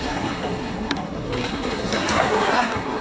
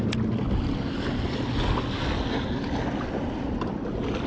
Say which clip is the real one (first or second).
second